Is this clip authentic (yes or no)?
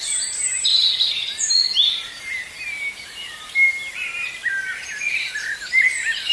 no